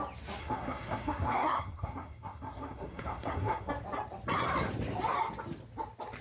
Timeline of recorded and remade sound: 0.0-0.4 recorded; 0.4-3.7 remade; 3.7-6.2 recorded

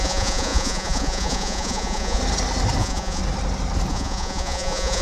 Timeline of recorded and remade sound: 0.0-2.2 remade; 2.2-2.8 recorded; 2.8-3.2 remade; 3.2-3.9 recorded; 3.9-5.0 remade

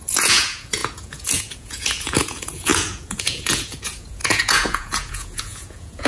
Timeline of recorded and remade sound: 0.0-6.1 remade

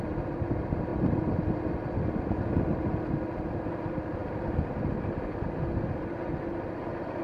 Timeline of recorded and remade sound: 0.0-0.9 recorded; 0.9-1.7 remade; 1.7-7.2 recorded

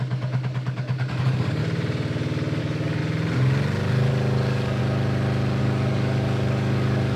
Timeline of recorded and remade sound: 0.0-1.6 remade; 1.6-2.6 recorded; 2.6-3.0 remade; 3.0-4.1 recorded; 4.1-4.8 remade; 4.8-5.6 recorded; 5.6-7.2 remade